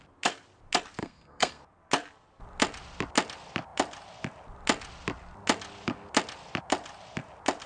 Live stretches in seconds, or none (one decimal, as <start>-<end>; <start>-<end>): 0.0-1.0; 1.6-7.7